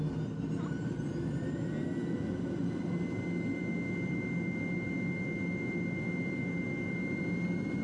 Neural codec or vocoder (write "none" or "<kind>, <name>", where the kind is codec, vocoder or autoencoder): none